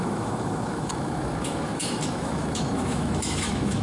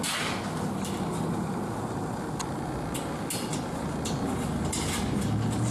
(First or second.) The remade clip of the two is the first